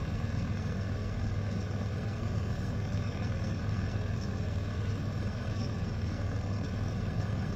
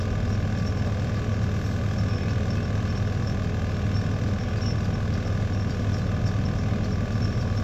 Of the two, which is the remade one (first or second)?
first